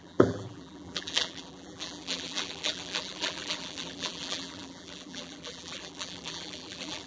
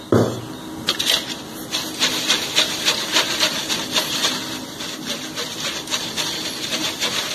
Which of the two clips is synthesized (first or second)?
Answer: first